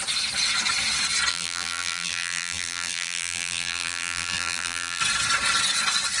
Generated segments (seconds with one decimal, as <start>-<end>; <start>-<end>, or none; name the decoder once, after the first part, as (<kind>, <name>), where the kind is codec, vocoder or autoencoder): 1.3-5.0 (vocoder, BigVGAN v2)